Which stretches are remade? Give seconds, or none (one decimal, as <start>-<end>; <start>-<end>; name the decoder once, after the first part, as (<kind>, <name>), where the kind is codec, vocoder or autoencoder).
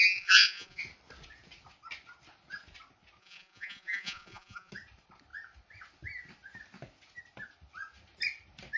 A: 0.0-0.8 (vocoder, Vocos); 3.2-4.7